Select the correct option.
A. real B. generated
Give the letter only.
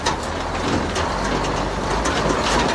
A